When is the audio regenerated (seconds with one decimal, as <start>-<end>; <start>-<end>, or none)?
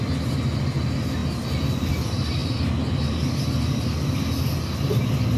none